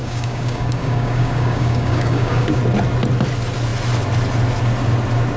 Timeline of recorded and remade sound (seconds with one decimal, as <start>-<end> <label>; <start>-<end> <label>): 0.0-2.6 remade; 2.6-5.4 recorded